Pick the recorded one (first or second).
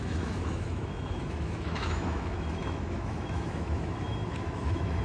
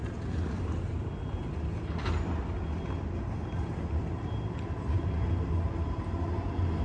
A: second